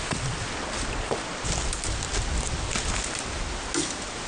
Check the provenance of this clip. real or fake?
real